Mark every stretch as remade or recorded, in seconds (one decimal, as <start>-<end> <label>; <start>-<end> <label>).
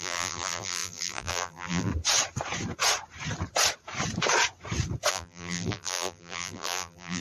0.0-1.9 remade; 1.9-5.1 recorded; 5.1-7.2 remade